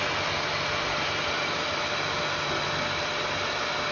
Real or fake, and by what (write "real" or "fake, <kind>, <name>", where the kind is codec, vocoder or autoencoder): real